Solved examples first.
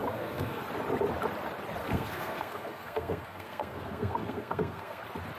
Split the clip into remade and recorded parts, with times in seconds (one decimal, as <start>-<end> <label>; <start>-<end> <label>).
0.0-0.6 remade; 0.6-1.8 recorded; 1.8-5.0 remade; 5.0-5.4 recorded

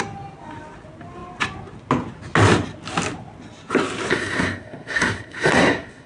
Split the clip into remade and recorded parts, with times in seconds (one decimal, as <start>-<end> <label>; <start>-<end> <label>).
0.0-4.1 recorded; 4.1-6.1 remade

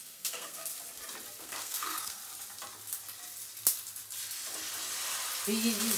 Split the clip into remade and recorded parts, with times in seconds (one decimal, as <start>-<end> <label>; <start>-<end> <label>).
0.0-0.7 remade; 0.7-1.4 recorded; 1.4-2.2 remade; 2.2-6.0 recorded

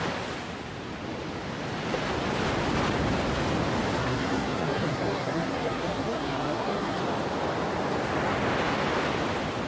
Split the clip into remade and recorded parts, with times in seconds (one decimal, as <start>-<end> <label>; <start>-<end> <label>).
0.0-4.0 recorded; 4.0-7.0 remade; 7.0-9.7 recorded

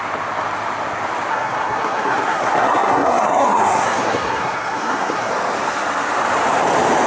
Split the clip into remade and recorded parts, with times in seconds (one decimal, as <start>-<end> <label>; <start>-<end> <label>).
0.0-1.3 recorded; 1.3-5.3 remade; 5.3-7.1 recorded

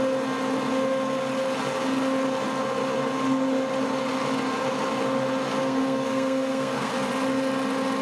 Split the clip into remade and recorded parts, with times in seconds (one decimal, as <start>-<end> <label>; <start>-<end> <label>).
0.0-5.6 recorded; 5.6-6.9 remade; 6.9-8.0 recorded

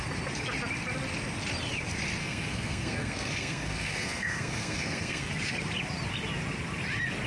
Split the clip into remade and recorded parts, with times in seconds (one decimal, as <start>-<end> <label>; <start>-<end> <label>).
0.0-2.2 recorded; 2.2-5.3 remade; 5.3-7.3 recorded